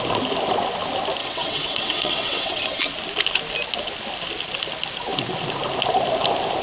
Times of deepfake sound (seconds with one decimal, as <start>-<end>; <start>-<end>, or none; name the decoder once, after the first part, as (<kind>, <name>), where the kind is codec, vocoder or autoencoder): 1.2-2.9 (vocoder, WaveNeXt)